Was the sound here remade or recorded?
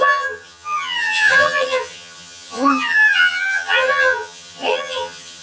remade